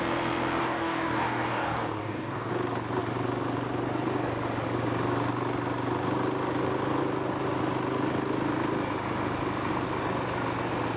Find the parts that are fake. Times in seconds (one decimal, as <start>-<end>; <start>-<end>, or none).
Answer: 0.6-2.5